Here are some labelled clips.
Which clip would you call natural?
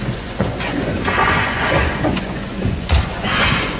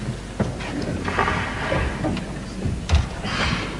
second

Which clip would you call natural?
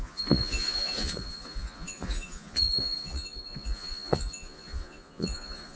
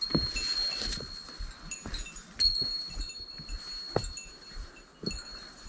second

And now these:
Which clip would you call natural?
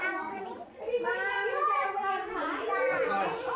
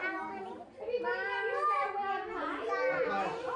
second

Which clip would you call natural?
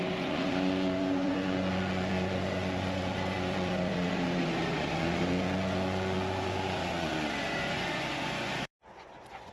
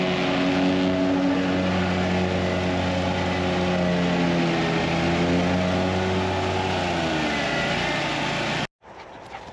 second